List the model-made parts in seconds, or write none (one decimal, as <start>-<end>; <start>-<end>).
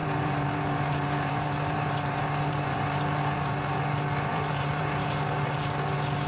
0.0-3.7; 4.3-5.6